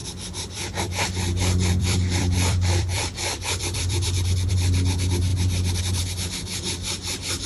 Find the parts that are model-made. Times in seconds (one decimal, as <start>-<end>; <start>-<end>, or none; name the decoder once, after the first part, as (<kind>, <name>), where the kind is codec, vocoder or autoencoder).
0.0-4.5 (vocoder, BigVGAN v2); 5.3-5.8